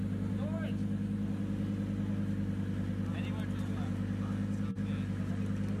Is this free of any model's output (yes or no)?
yes